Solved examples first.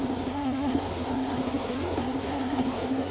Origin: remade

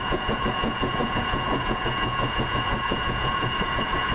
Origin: remade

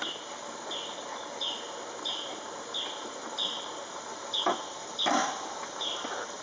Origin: recorded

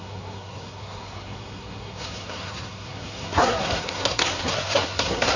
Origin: remade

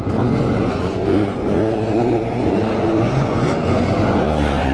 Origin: remade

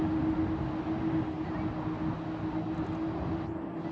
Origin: recorded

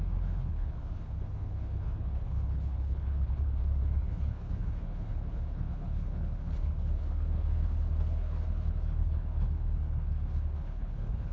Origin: remade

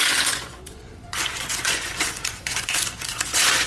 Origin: remade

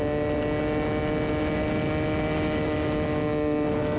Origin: recorded